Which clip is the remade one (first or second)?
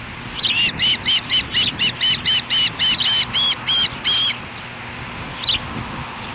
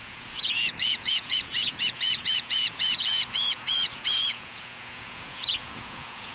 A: second